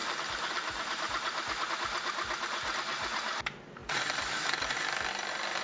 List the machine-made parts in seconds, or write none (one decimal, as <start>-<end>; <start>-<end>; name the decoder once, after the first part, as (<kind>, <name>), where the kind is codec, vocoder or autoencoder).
3.8-5.1 (vocoder, BigVGAN v2)